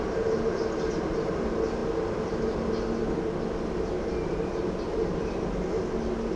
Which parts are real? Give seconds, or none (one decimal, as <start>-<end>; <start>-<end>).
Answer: 0.0-6.4